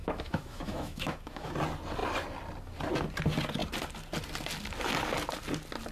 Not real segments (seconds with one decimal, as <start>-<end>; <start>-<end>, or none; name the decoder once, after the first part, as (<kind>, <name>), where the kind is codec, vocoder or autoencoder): 0.0-1.5 (autoencoder, DAC-VAE)